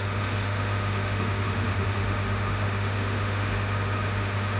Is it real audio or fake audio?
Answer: fake